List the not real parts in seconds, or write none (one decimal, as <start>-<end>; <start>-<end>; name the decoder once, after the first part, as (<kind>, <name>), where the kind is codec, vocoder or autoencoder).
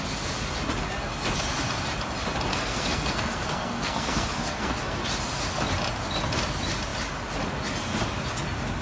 2.5-5.0 (codec, SNAC)